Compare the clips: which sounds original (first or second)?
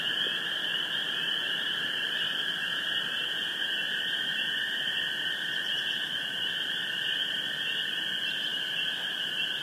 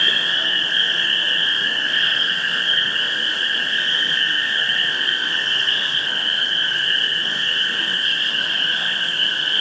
first